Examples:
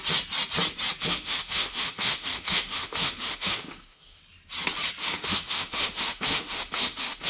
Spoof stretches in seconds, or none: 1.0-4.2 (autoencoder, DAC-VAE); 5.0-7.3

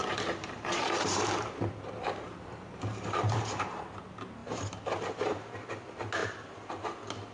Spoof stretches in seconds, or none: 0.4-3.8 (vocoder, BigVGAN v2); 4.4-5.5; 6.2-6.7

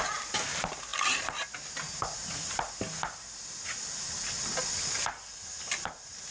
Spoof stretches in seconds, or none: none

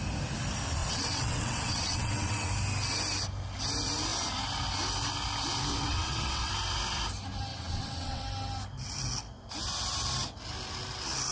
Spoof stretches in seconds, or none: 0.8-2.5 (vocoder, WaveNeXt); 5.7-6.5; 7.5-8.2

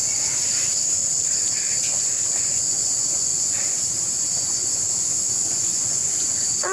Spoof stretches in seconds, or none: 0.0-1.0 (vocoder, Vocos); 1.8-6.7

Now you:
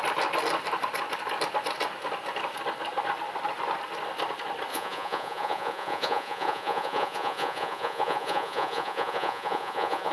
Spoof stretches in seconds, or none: 4.7-10.1 (vocoder, Vocos)

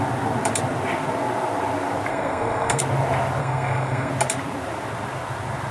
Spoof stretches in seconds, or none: 2.1-2.8 (codec, SNAC); 3.4-4.1